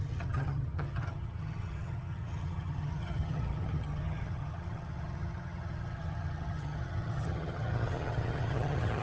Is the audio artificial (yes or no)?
yes